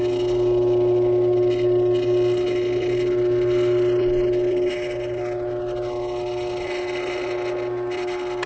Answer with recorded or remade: recorded